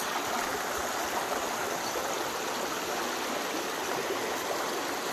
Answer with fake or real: real